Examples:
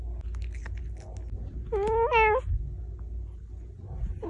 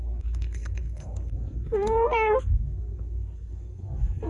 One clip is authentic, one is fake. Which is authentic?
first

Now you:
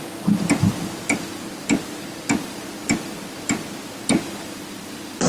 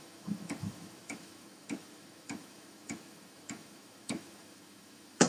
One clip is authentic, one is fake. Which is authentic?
first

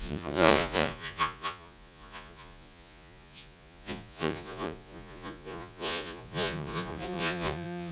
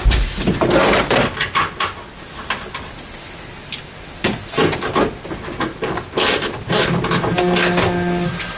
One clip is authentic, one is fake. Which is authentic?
second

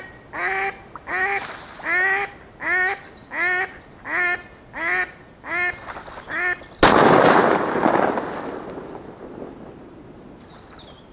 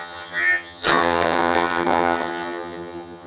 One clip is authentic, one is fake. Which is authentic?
first